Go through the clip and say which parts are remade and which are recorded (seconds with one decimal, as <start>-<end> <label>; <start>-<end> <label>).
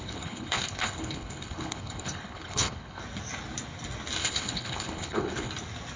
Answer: 0.0-3.0 remade; 3.0-4.2 recorded; 4.2-5.5 remade; 5.5-6.0 recorded